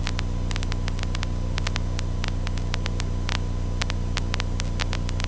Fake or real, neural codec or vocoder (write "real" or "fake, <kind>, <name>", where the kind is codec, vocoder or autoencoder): real